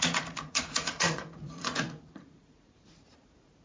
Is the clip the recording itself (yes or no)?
no